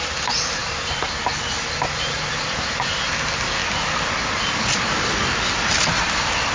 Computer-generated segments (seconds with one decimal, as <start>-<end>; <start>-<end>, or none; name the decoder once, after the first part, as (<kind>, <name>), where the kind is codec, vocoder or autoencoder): none